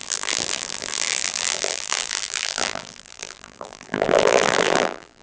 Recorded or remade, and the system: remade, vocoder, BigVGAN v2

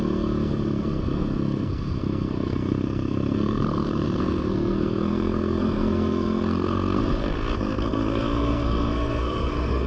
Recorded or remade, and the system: remade, codec, SNAC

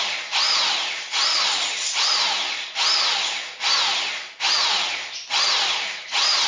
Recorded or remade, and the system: recorded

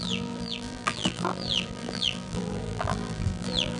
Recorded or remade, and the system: remade, vocoder, BigVGAN v2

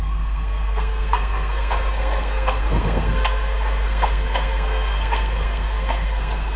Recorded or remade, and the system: remade, codec, SNAC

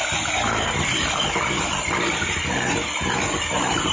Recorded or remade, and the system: remade, vocoder, BigVGAN v2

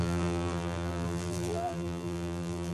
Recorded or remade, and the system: remade, vocoder, BigVGAN v2